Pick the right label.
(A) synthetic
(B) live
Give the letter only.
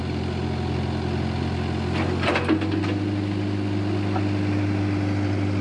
B